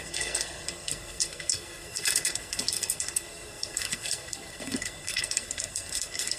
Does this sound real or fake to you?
fake